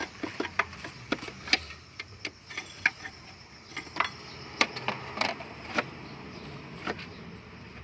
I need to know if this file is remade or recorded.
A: remade